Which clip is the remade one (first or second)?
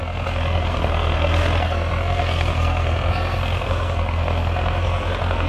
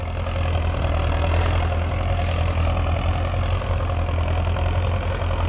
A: first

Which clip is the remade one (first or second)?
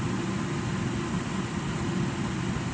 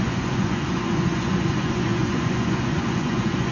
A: second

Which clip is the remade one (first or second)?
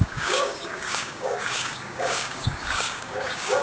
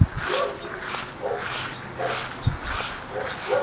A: first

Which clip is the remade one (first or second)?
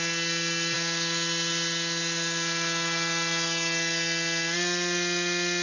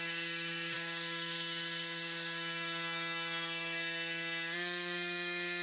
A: second